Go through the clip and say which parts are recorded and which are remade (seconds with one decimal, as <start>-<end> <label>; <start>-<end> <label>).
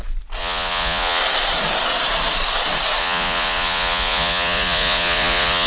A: 0.0-0.4 recorded; 0.4-1.2 remade; 1.2-3.0 recorded; 3.0-5.7 remade